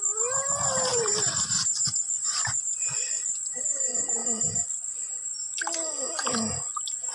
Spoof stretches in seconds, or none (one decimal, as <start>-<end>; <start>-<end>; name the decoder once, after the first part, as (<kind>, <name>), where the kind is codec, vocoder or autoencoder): none